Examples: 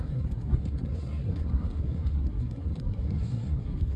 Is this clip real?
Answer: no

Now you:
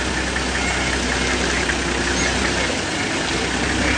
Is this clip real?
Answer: yes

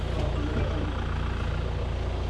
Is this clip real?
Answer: yes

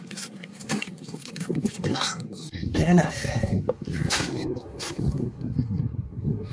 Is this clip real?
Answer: no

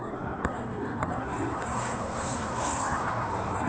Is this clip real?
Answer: no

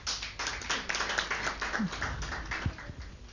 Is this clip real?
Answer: yes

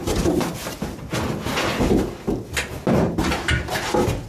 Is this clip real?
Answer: yes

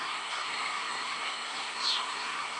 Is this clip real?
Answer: no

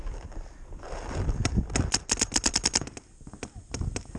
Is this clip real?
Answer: yes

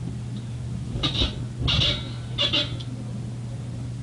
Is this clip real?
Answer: yes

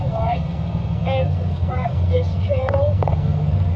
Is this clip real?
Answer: no